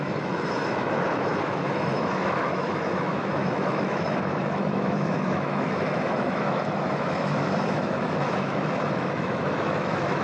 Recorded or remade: remade